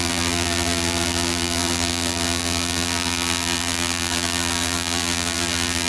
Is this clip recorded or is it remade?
remade